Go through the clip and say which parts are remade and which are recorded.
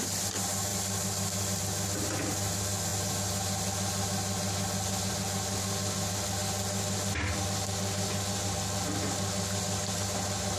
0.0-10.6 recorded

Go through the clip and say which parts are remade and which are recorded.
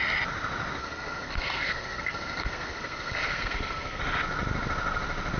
0.0-0.8 recorded; 0.8-4.0 remade; 4.0-5.4 recorded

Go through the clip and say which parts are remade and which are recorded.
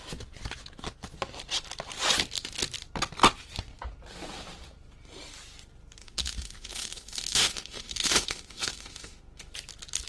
0.0-6.0 recorded; 6.0-9.5 remade; 9.5-10.1 recorded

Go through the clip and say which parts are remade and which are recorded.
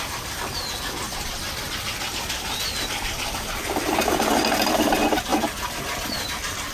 0.0-6.7 recorded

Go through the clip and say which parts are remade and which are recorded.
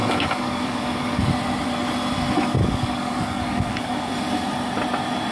0.0-1.2 remade; 1.2-2.6 recorded; 2.6-4.1 remade; 4.1-5.3 recorded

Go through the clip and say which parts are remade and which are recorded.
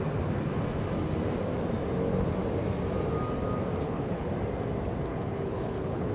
0.0-3.8 recorded; 3.8-4.3 remade; 4.3-5.1 recorded; 5.1-6.1 remade